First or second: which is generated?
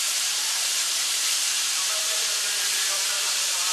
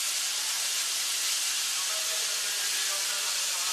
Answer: first